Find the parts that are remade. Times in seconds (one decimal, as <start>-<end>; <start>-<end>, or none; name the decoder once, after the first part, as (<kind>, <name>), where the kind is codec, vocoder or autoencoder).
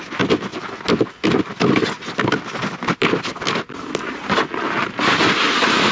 none